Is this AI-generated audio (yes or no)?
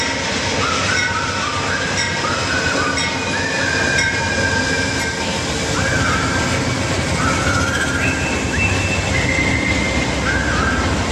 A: no